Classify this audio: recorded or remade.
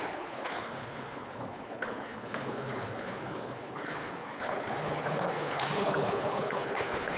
remade